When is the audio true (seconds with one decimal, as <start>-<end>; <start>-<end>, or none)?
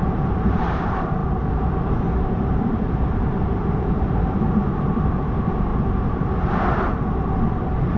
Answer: 1.2-2.3